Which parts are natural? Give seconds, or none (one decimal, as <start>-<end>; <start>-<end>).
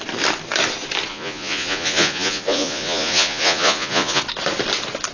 0.0-1.1; 4.2-5.1